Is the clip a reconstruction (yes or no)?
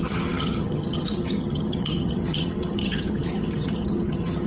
yes